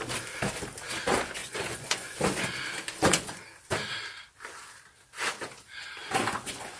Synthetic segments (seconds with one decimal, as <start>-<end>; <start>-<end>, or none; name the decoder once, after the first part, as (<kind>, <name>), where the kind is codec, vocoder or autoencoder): 1.4-2.2 (vocoder, Vocos); 2.9-3.4; 6.0-6.8